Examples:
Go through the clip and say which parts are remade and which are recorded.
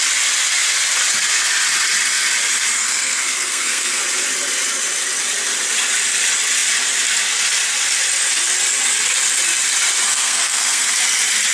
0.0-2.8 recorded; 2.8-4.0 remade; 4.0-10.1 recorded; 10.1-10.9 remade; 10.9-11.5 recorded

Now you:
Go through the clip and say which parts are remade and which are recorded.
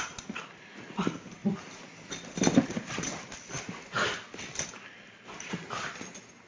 0.0-6.5 recorded